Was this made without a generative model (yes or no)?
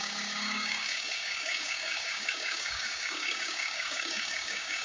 no